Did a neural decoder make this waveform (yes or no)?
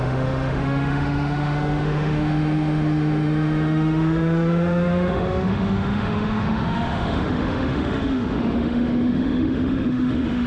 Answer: yes